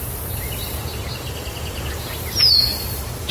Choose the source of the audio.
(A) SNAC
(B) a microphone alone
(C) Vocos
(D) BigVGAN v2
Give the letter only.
B